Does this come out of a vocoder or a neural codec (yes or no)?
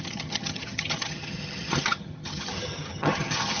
yes